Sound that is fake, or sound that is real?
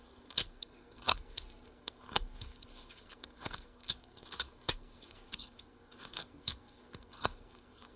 fake